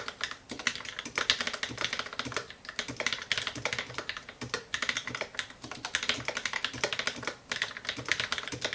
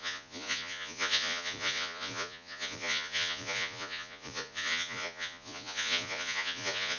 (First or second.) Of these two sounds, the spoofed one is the second